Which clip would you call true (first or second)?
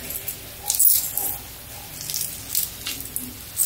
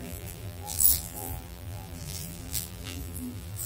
first